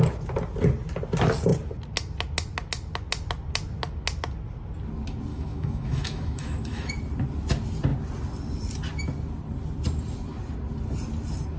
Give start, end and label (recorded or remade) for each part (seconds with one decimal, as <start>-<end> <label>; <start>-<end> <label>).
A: 0.0-5.3 recorded; 5.3-6.9 remade; 6.9-11.6 recorded